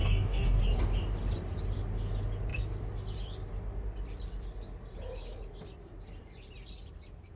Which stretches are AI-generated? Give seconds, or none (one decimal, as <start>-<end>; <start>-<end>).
0.0-0.6